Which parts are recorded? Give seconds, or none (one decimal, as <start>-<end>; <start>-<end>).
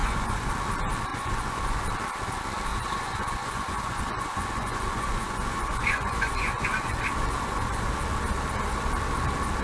0.5-1.1; 1.8-2.7; 7.9-9.6